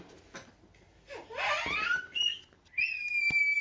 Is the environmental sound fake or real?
real